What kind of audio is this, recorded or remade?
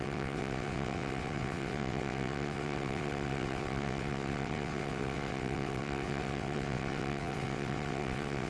remade